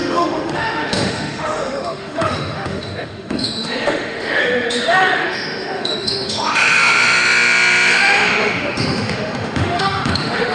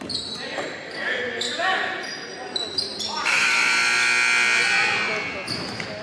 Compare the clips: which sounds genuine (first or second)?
second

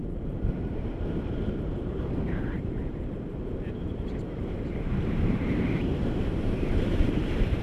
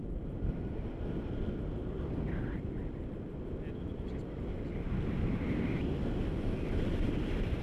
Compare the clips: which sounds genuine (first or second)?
second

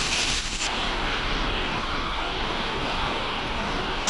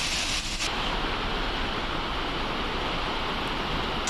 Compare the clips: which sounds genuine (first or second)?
second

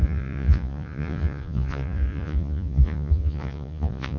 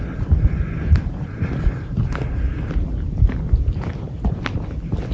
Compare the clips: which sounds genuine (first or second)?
second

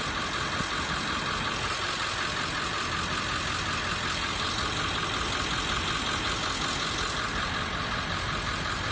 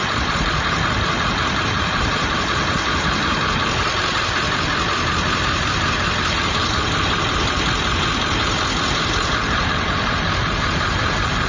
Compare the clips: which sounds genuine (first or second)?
first